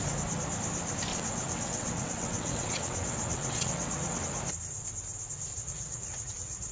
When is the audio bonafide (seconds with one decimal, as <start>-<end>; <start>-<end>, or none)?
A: 0.0-1.1; 4.2-5.5